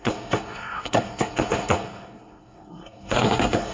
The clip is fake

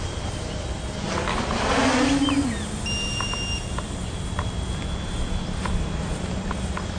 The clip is real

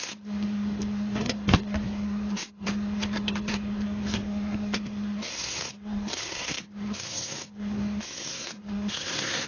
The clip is fake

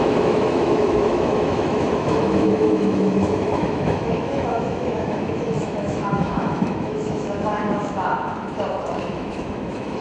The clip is fake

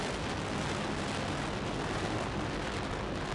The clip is real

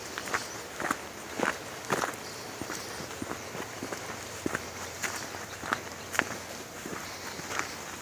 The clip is real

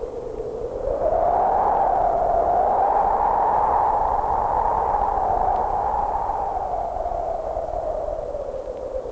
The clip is real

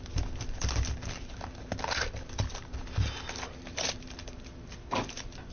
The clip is fake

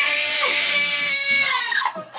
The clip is fake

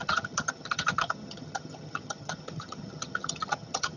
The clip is fake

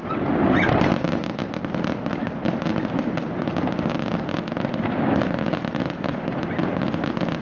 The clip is real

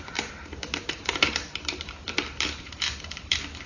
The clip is fake